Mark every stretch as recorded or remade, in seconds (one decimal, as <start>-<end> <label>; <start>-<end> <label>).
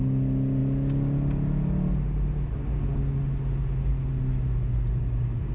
0.0-5.5 recorded